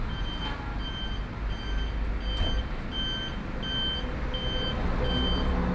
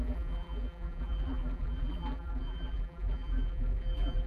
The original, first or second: first